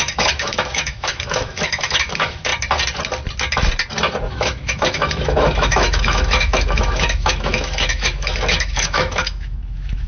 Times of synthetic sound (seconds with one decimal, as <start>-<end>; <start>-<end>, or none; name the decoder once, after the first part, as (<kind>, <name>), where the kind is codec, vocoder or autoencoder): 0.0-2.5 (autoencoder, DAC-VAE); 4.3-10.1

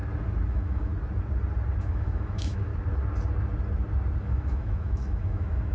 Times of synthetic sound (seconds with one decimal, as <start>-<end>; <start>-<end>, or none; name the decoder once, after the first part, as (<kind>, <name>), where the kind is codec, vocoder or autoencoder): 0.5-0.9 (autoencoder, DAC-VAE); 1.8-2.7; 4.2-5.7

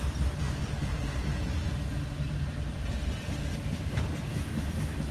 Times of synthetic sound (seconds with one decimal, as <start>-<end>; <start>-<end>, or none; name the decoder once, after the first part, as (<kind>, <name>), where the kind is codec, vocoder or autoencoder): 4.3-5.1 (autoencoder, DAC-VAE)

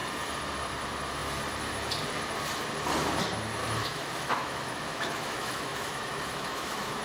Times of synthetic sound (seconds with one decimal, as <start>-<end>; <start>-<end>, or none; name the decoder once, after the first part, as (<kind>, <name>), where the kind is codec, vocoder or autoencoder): 3.6-7.0 (autoencoder, DAC-VAE)

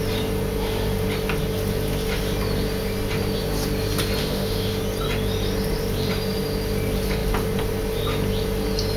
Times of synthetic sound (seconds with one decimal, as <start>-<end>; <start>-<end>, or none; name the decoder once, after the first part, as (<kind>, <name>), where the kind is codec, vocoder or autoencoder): 4.2-4.8 (autoencoder, DAC-VAE)